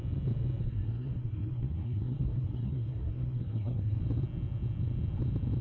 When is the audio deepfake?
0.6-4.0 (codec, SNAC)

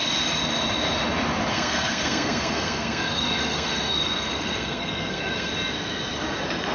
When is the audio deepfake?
1.5-5.5 (codec, SNAC)

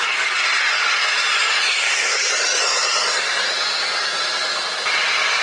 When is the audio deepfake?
1.8-2.3 (codec, SNAC)

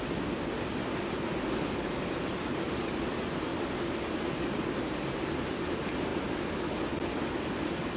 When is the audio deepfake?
none

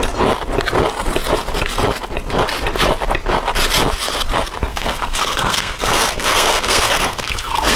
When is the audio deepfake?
4.7-7.8 (codec, SNAC)

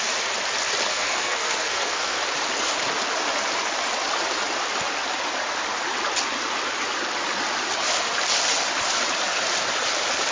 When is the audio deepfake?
0.9-2.2 (codec, SNAC)

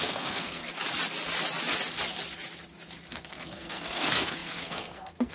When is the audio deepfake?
0.0-0.6 (codec, SNAC); 3.1-5.3